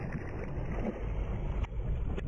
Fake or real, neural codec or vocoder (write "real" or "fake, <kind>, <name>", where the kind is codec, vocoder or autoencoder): real